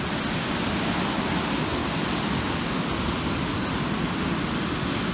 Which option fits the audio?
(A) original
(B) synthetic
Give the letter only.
A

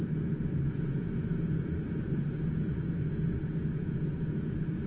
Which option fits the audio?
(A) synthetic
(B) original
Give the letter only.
A